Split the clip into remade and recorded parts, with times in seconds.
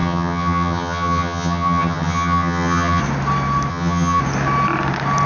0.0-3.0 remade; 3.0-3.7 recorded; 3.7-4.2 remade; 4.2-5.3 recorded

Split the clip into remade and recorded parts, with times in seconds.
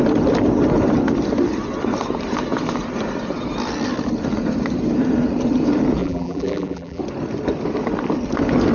0.0-6.0 recorded; 6.0-7.0 remade; 7.0-8.7 recorded